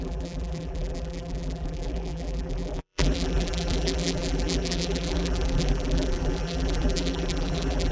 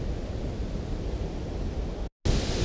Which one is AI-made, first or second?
first